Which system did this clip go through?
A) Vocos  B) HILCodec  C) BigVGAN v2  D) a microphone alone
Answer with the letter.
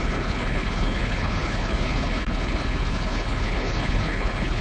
B